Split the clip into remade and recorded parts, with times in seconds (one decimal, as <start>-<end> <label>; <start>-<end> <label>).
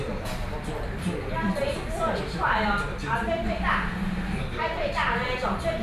0.0-5.8 remade